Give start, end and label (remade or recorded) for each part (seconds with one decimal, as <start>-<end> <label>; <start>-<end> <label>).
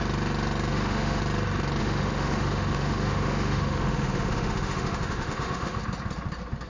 0.0-0.7 recorded; 0.7-1.2 remade; 1.2-1.8 recorded; 1.8-5.8 remade; 5.8-6.7 recorded